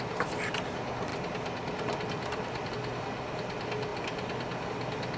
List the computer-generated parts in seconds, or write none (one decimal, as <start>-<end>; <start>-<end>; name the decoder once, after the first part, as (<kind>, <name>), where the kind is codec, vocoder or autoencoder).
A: none